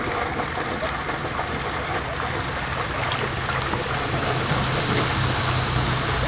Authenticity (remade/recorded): recorded